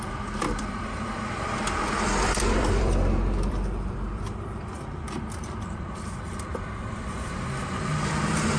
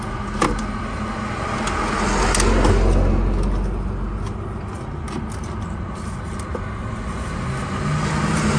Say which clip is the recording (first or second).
second